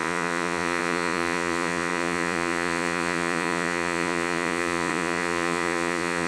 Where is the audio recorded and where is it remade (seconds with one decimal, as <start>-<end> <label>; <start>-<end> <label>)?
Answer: 0.0-6.3 remade